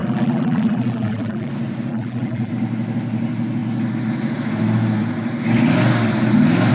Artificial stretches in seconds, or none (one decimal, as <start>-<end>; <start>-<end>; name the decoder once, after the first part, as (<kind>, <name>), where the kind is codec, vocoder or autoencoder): 0.0-1.5 (vocoder, BigVGAN v2); 1.9-2.5